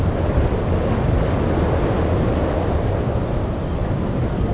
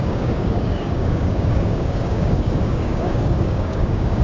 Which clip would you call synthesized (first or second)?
second